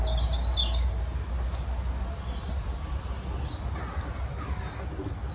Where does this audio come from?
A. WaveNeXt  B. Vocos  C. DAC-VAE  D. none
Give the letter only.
D